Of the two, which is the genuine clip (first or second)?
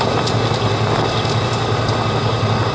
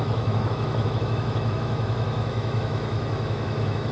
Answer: first